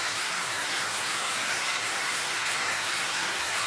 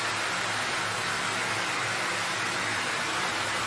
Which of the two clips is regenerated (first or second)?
first